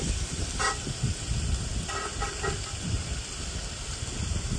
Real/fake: real